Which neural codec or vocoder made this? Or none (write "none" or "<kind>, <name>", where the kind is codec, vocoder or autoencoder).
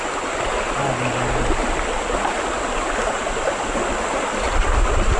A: none